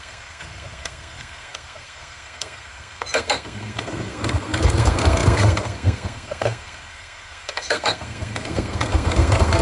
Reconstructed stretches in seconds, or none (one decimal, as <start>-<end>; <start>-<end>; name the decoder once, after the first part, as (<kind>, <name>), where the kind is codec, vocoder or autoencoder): 0.0-9.6 (codec, SNAC)